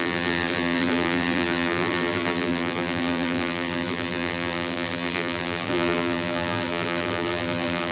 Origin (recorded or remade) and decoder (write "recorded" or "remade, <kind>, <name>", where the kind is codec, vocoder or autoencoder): remade, vocoder, BigVGAN v2